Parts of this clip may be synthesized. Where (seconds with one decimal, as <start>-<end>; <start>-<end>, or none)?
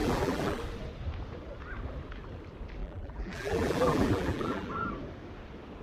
0.0-0.6; 2.8-4.7